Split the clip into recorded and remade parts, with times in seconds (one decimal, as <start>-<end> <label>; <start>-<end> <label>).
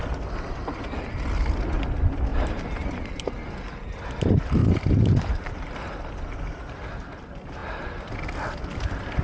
0.0-4.6 recorded; 4.6-6.1 remade; 6.1-7.6 recorded; 7.6-9.2 remade